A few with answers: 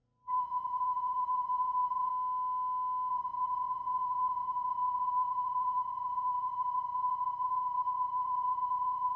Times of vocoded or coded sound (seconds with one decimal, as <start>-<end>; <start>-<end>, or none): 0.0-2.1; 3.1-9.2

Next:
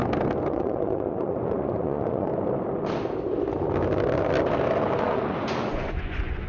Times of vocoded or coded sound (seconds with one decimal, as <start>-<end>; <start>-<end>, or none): 0.5-2.3; 5.0-6.5

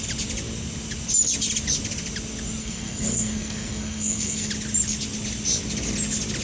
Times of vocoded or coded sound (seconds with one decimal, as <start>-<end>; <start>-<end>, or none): 2.6-4.5

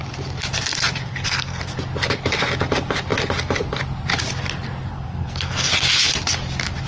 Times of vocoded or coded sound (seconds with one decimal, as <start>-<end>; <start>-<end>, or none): 1.1-1.6; 4.9-5.7

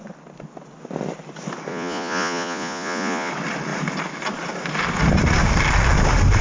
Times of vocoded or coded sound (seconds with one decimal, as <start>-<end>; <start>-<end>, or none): 1.7-3.3

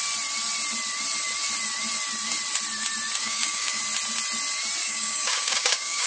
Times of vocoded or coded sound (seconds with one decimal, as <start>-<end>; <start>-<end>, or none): 3.2-3.8; 4.8-6.1